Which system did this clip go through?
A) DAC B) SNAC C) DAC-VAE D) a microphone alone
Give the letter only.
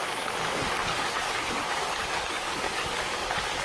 A